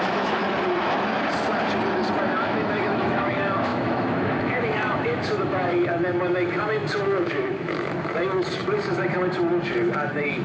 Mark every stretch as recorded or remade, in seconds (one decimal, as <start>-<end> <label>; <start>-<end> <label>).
0.0-0.4 remade; 0.4-2.3 recorded; 2.3-10.4 remade

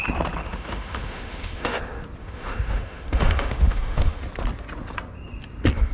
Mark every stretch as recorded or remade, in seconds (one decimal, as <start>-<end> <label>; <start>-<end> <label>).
0.0-0.4 recorded; 0.4-1.8 remade; 1.8-2.2 recorded; 2.2-4.2 remade; 4.2-5.9 recorded

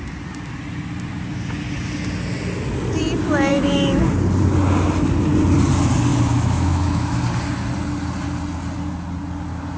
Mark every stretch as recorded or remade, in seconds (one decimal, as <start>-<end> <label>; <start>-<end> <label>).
0.0-3.5 recorded; 3.5-4.0 remade; 4.0-6.1 recorded; 6.1-7.2 remade; 7.2-9.8 recorded

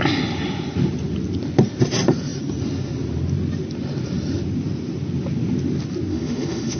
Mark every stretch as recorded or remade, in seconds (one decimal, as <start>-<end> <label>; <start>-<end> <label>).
0.0-6.1 recorded; 6.1-6.8 remade

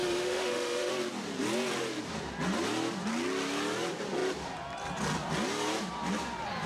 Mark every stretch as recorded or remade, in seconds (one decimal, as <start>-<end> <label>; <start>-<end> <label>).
0.0-0.9 remade; 0.9-6.7 recorded